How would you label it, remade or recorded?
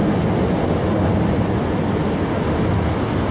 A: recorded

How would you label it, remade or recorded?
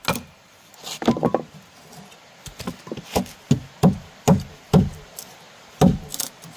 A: recorded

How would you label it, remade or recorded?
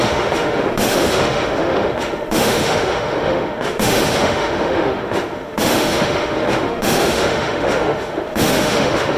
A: remade